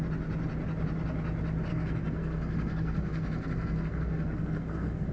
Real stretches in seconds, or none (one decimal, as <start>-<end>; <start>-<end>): 0.0-1.7